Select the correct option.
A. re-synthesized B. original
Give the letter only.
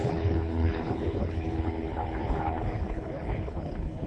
A